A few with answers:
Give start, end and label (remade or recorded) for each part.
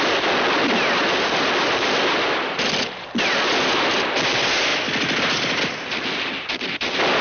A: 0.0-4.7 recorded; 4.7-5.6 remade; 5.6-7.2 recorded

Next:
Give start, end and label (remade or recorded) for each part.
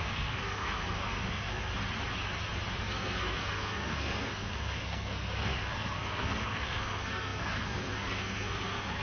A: 0.0-1.7 remade; 1.7-2.8 recorded; 2.8-9.0 remade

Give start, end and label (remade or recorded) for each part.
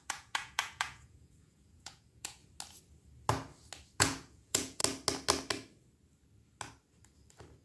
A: 0.0-2.4 remade; 2.4-4.0 recorded; 4.0-4.8 remade; 4.8-7.6 recorded